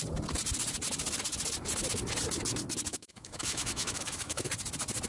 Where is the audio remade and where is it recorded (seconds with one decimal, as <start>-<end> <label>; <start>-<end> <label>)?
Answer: 0.0-2.9 recorded; 2.9-4.5 remade; 4.5-5.1 recorded